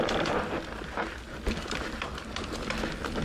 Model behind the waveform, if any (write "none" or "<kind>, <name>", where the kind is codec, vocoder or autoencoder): none